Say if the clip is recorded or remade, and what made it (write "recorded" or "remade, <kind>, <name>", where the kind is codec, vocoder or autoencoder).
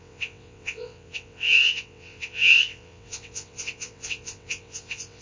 remade, vocoder, WaveNeXt